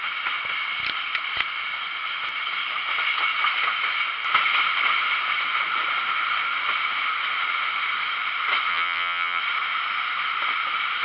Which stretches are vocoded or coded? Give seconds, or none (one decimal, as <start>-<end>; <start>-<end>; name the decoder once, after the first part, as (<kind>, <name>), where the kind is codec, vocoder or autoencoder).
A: 8.7-9.4 (vocoder, HiFi-GAN)